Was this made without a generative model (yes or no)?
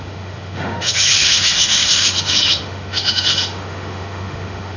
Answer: no